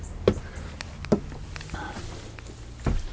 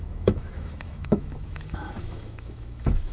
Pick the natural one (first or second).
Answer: first